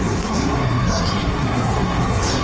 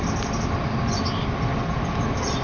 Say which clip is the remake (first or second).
first